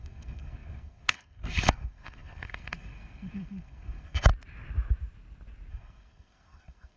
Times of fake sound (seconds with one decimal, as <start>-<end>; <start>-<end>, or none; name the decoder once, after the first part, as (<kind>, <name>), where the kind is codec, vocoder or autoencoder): 0.0-4.3 (codec, SNAC); 5.7-7.0